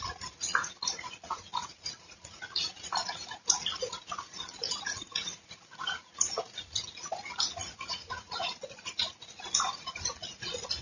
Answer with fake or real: fake